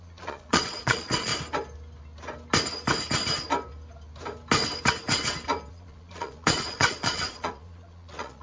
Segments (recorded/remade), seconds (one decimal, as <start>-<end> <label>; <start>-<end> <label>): 0.0-1.3 remade; 1.3-5.7 recorded; 5.7-8.4 remade